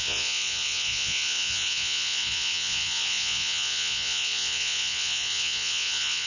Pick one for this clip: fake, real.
fake